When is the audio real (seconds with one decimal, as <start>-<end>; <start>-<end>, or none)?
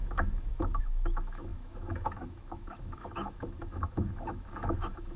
none